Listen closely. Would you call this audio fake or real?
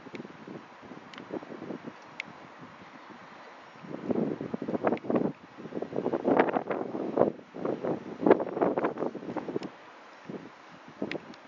real